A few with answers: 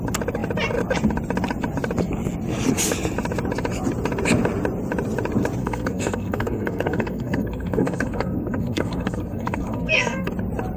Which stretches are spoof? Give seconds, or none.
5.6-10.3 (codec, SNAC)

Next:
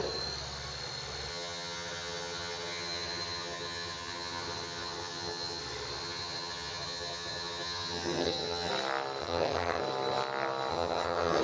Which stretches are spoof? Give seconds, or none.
1.3-5.6 (vocoder, HiFi-GAN); 6.0-8.7; 9.2-9.8; 10.7-11.4

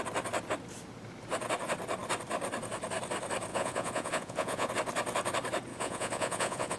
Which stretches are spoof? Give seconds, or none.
3.5-4.7 (vocoder, Vocos); 5.7-6.8